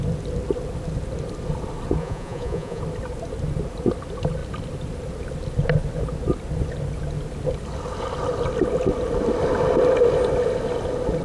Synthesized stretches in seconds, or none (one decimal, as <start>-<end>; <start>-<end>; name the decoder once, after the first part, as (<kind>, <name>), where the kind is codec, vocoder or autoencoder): 2.0-2.8 (vocoder, Vocos)